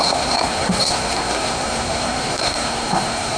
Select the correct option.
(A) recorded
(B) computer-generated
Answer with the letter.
B